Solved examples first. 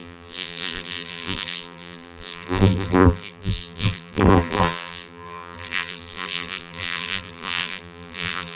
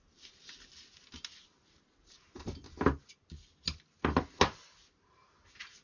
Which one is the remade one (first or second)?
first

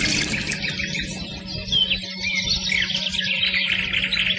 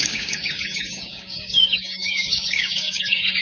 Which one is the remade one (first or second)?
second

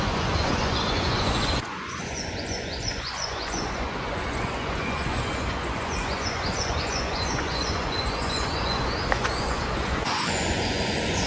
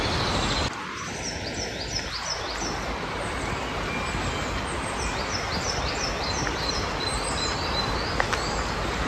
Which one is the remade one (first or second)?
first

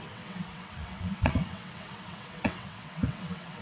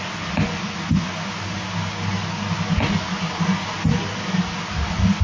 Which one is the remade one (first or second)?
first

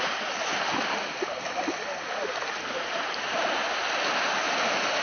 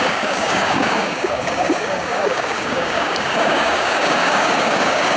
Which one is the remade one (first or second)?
second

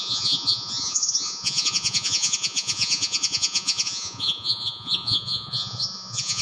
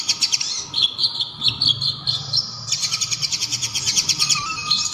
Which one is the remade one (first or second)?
first